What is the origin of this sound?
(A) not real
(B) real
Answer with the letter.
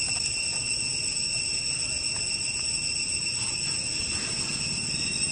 B